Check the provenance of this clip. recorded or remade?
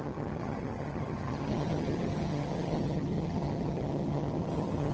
remade